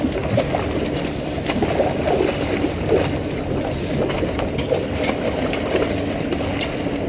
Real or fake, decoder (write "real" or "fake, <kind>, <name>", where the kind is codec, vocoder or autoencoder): real